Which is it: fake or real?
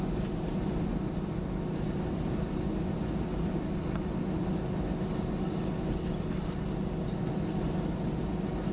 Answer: real